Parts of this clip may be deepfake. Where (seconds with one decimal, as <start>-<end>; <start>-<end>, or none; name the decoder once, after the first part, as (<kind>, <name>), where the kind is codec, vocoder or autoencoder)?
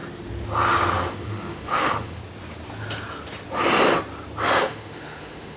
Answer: 1.1-2.2 (autoencoder, DAC-VAE); 4.6-5.6